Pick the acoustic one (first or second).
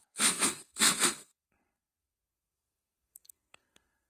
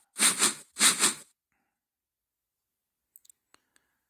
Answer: second